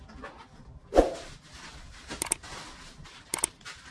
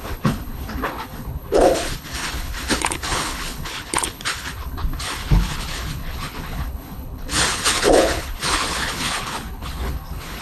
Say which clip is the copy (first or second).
second